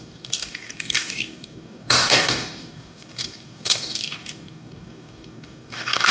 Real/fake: fake